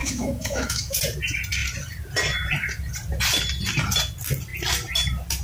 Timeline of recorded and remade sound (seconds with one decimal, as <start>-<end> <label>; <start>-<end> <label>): 0.0-1.0 remade; 1.0-5.4 recorded